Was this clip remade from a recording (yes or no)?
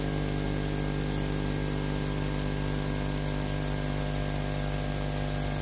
no